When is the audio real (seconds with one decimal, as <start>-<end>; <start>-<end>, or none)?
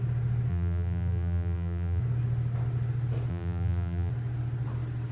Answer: 0.0-0.5; 2.0-3.3; 4.1-5.1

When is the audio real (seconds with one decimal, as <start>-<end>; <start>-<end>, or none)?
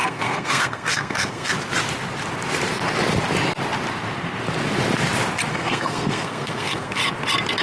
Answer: 1.5-5.5; 7.0-7.6